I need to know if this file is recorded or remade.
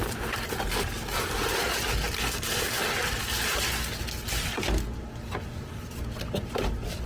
recorded